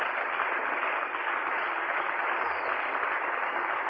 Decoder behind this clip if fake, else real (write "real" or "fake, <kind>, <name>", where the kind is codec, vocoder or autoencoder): fake, vocoder, BigVGAN v2